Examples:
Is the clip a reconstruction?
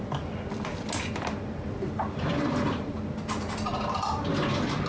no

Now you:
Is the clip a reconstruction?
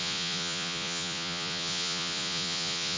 yes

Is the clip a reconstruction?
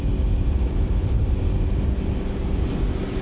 no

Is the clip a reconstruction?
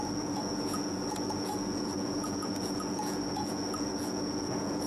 yes